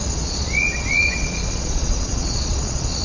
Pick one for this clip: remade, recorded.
remade